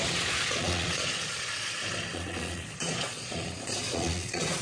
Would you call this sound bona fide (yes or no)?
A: no